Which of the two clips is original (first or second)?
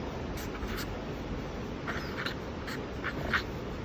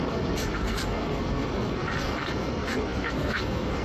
first